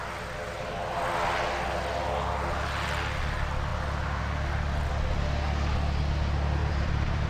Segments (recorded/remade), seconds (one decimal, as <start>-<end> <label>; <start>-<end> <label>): 0.0-6.6 recorded; 6.6-7.3 remade

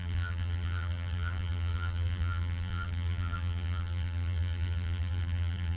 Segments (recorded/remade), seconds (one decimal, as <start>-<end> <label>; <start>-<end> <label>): 0.0-5.8 remade

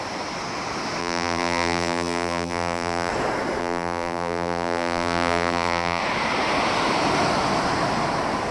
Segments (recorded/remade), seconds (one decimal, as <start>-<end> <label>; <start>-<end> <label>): 0.0-1.0 recorded; 1.0-3.1 remade; 3.1-3.6 recorded; 3.6-6.0 remade; 6.0-8.5 recorded

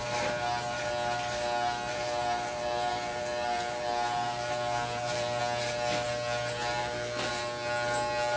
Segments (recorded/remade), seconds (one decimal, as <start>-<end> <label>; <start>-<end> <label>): 0.0-1.9 recorded; 1.9-5.4 remade; 5.4-6.8 recorded; 6.8-7.3 remade; 7.3-8.4 recorded

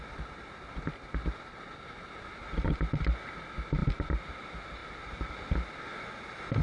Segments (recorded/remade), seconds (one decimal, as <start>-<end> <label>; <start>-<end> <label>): 0.0-4.8 recorded; 4.8-5.5 remade; 5.5-6.6 recorded

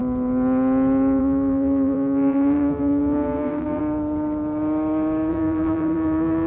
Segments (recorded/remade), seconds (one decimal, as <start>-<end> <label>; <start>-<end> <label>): 0.0-1.2 recorded; 1.2-3.8 remade; 3.8-5.3 recorded; 5.3-6.5 remade

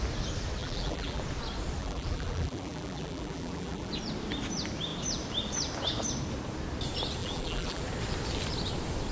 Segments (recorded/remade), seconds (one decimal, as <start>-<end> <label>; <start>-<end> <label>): 0.0-0.6 recorded; 0.6-1.2 remade; 1.2-1.8 recorded; 1.8-3.9 remade; 3.9-7.2 recorded; 7.2-7.8 remade; 7.8-9.1 recorded

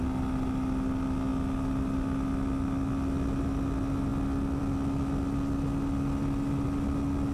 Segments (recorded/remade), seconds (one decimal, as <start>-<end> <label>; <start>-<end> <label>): 0.0-7.3 recorded